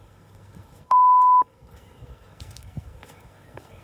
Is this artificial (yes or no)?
yes